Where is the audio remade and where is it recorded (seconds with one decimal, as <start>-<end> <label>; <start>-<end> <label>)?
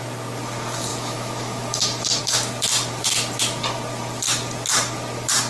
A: 0.0-0.9 recorded; 0.9-2.2 remade; 2.2-5.5 recorded